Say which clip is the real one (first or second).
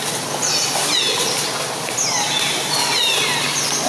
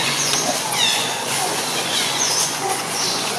first